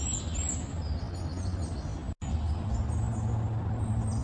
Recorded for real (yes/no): yes